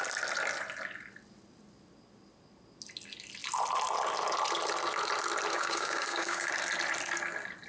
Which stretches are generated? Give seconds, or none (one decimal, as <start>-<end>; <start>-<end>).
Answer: 5.5-6.5